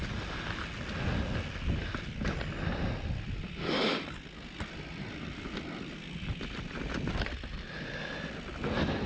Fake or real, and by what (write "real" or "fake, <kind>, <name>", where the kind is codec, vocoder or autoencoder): real